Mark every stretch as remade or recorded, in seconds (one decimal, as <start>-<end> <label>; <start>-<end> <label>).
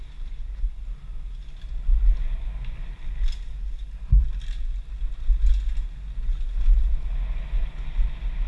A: 0.0-8.5 recorded